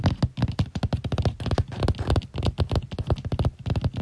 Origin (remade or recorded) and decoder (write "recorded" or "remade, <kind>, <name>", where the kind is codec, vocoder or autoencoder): recorded